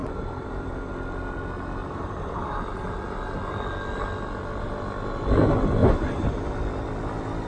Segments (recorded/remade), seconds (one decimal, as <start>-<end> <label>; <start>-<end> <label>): 0.0-0.9 remade; 0.9-1.8 recorded; 1.8-2.6 remade; 2.6-5.8 recorded; 5.8-6.5 remade; 6.5-7.5 recorded